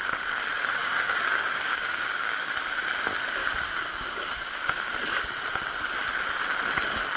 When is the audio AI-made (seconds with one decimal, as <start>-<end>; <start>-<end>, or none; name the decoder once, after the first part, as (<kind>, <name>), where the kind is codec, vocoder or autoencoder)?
0.8-2.5 (codec, DAC); 3.4-4.9